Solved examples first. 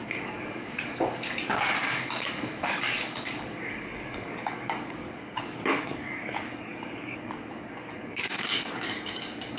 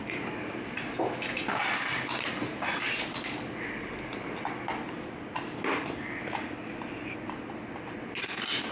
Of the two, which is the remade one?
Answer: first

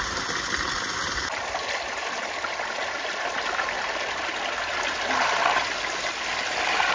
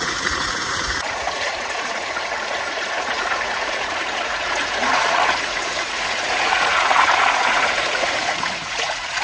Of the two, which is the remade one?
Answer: second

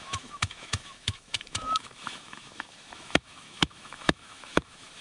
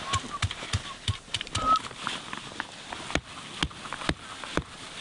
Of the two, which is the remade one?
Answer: first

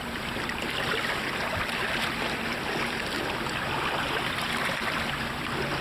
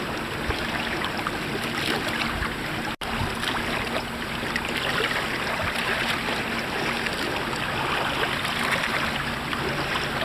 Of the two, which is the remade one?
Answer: first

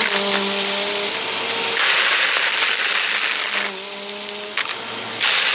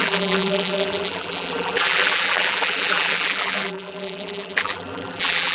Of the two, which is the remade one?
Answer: second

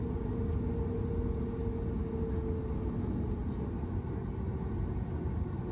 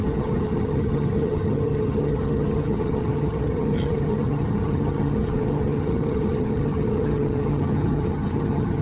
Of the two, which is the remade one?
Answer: second